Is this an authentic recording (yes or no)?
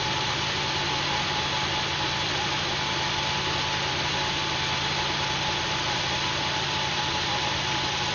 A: yes